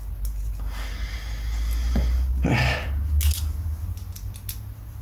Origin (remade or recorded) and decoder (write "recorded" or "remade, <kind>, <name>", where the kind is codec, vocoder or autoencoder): recorded